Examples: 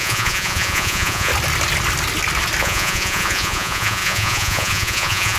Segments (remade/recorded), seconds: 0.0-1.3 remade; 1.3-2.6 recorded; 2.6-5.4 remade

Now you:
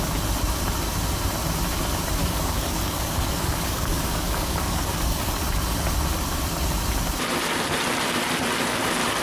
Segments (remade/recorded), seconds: 0.0-2.2 recorded; 2.2-5.4 remade; 5.4-9.2 recorded

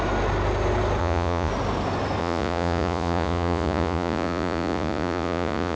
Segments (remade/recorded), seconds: 0.0-1.0 recorded; 1.0-1.5 remade; 1.5-2.2 recorded; 2.2-5.8 remade